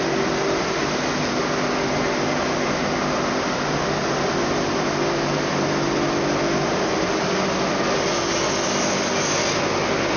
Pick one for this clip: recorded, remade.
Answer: recorded